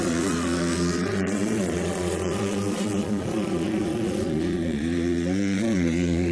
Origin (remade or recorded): remade